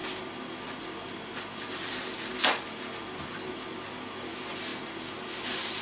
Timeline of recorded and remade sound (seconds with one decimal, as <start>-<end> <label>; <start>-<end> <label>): 0.0-5.8 recorded

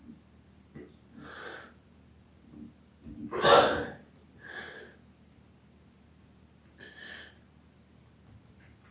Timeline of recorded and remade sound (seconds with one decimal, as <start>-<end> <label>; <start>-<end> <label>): 0.0-8.9 recorded